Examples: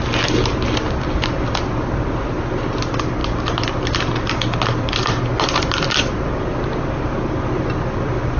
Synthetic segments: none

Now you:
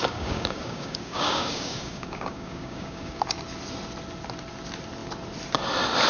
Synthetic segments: 0.0-3.2 (codec, DAC)

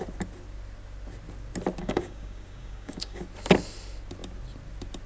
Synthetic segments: 1.8-3.2 (codec, DAC)

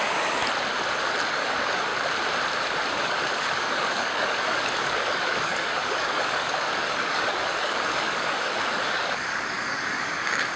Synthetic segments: 0.0-0.4 (codec, DAC); 1.3-1.9; 2.9-10.6

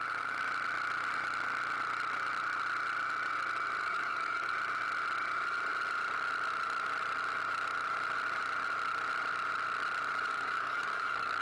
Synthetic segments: 3.8-4.5 (codec, DAC); 10.3-11.4

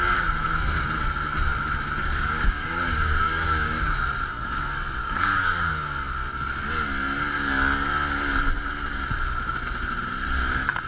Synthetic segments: 2.0-3.9 (codec, DAC); 5.0-5.7

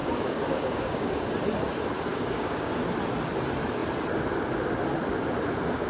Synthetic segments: 0.0-1.3 (codec, DAC); 2.1-2.7

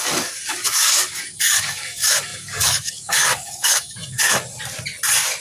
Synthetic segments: 0.0-4.3 (codec, DAC)